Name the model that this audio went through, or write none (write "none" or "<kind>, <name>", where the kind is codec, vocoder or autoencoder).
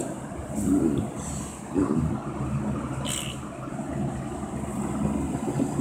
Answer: none